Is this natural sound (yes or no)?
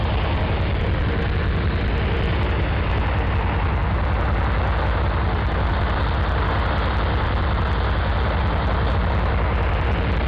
yes